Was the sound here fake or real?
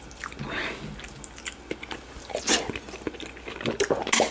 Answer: real